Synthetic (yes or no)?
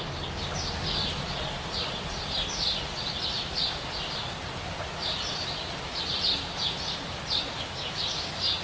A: no